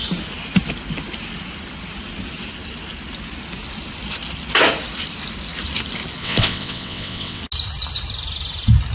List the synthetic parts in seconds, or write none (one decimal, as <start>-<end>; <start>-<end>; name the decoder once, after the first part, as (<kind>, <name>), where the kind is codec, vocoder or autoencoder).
6.2-7.4 (vocoder, WaveNeXt)